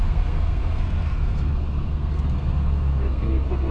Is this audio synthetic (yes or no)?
yes